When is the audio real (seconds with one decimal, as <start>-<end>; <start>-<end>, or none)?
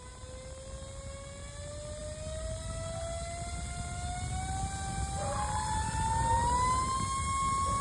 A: 0.0-7.8